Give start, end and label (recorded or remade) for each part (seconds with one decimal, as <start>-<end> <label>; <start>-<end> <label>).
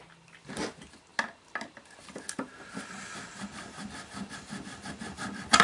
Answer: 0.0-5.6 recorded